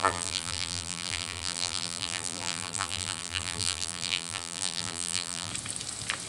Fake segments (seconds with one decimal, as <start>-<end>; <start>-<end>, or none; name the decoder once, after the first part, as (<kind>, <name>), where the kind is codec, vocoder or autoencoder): 0.0-5.5 (vocoder, BigVGAN v2)